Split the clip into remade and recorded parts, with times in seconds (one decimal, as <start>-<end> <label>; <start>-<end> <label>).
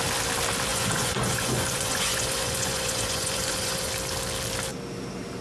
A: 0.0-0.7 recorded; 0.7-3.9 remade; 3.9-5.4 recorded